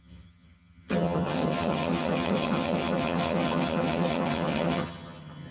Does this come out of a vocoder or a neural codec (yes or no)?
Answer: yes